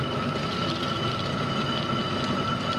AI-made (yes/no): no